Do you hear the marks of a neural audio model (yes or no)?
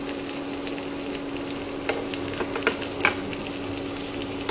no